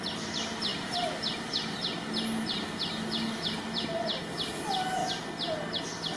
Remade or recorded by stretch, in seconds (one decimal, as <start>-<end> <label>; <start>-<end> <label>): 0.0-6.2 recorded